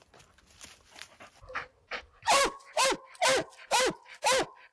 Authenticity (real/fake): real